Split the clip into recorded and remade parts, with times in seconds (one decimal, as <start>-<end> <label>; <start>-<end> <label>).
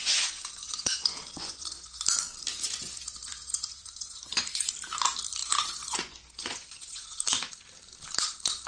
0.0-2.0 remade; 2.0-2.6 recorded; 2.6-4.7 remade; 4.7-5.4 recorded; 5.4-7.2 remade; 7.2-8.7 recorded